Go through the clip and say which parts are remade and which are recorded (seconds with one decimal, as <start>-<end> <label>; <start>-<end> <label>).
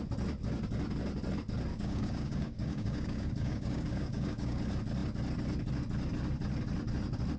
0.0-1.7 recorded; 1.7-4.6 remade; 4.6-7.4 recorded